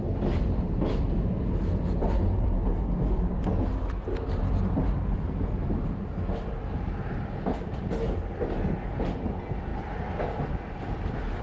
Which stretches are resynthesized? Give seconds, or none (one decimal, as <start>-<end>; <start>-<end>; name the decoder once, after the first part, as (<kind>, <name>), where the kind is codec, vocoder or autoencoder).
none